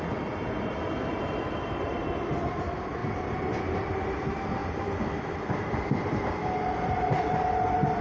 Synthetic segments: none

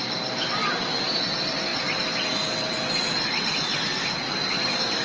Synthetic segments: 0.6-1.1 (vocoder, BigVGAN v2)

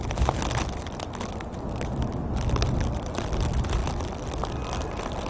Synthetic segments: none

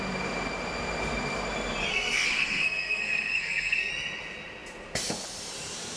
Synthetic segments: 1.9-3.9 (codec, SNAC)